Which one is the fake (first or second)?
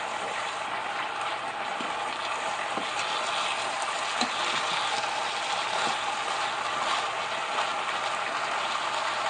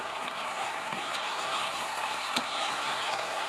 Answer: second